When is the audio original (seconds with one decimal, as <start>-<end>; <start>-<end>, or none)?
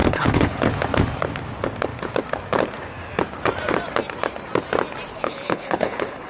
0.7-5.1